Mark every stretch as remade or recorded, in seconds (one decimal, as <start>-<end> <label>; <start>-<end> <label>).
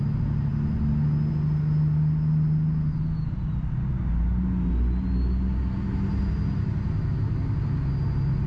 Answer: 0.0-8.5 recorded